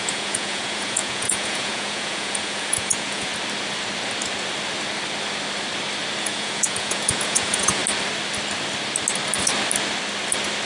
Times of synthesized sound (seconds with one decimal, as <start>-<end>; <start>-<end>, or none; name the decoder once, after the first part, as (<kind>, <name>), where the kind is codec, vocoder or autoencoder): 0.0-3.3 (vocoder, Vocos); 6.2-7.8